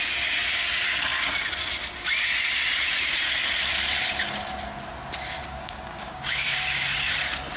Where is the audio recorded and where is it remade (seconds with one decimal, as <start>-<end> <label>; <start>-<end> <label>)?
0.0-5.4 recorded; 5.4-6.8 remade; 6.8-7.6 recorded